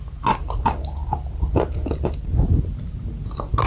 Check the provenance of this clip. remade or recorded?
recorded